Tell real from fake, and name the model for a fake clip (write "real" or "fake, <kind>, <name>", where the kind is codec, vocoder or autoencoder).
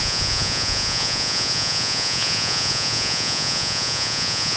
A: fake, vocoder, Vocos